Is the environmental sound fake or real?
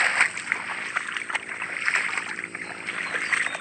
real